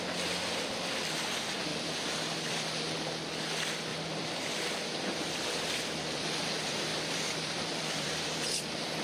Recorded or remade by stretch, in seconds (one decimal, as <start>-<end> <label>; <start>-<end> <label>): 0.0-1.7 recorded; 1.7-2.6 remade; 2.6-3.9 recorded; 3.9-6.4 remade; 6.4-6.9 recorded; 6.9-9.0 remade